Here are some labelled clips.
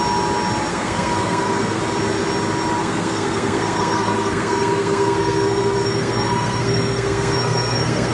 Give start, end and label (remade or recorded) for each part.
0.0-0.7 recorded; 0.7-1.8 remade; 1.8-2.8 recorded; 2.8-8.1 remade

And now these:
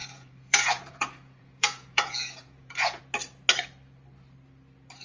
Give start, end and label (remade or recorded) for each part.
0.0-3.0 remade; 3.0-5.0 recorded

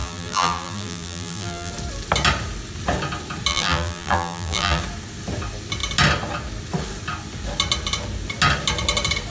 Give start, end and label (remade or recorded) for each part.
0.0-1.7 remade; 1.7-3.5 recorded; 3.5-4.8 remade; 4.8-9.3 recorded

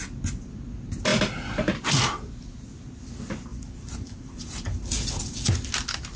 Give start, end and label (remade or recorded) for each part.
0.0-3.5 recorded; 3.5-5.5 remade; 5.5-6.2 recorded